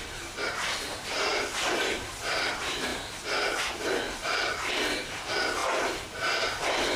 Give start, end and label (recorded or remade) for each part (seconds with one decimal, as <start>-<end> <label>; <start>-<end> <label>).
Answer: 0.0-7.0 recorded